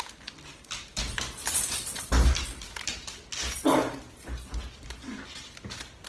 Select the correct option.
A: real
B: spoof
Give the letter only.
A